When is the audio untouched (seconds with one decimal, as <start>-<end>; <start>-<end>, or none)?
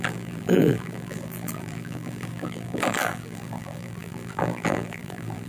none